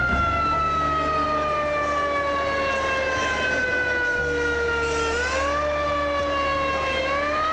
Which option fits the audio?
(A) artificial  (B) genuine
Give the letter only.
B